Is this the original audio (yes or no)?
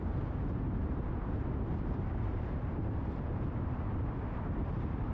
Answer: no